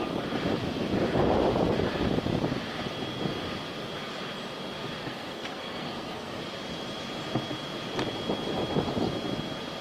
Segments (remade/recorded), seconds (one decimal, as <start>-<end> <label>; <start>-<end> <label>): 0.0-5.0 recorded; 5.0-6.4 remade; 6.4-9.8 recorded